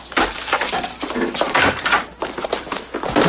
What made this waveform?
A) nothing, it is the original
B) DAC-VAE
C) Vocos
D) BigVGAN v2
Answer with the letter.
A